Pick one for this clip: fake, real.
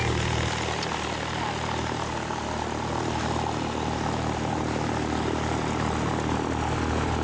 real